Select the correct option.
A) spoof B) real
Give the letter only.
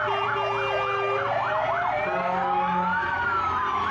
B